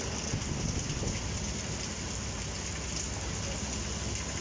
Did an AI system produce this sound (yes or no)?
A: no